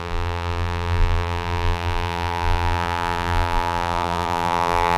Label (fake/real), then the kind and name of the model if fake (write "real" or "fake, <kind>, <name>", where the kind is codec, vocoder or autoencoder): fake, vocoder, BigVGAN v2